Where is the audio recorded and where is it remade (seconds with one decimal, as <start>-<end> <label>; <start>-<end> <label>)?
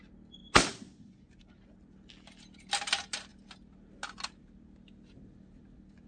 0.0-6.1 recorded